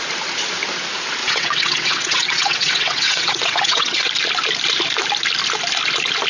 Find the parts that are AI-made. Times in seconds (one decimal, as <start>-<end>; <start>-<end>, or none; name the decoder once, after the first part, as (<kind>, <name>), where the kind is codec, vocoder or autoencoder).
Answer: 1.2-4.1 (vocoder, WaveNeXt)